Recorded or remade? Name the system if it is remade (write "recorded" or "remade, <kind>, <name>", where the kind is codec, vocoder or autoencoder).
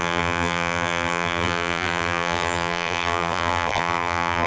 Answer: remade, vocoder, BigVGAN v2